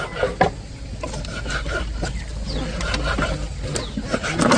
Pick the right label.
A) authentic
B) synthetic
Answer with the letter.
A